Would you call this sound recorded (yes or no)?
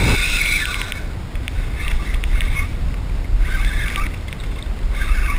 yes